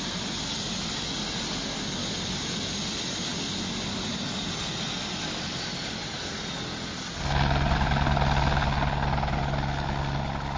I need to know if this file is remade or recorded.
recorded